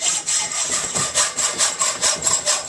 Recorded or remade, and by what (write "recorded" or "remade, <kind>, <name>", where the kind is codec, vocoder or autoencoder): remade, vocoder, BigVGAN v2